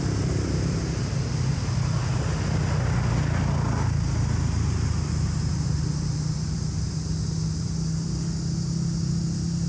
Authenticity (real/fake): real